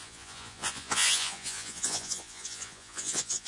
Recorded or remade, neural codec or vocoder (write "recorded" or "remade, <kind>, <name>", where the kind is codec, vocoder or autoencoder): remade, vocoder, Vocos